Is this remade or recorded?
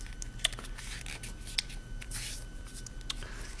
recorded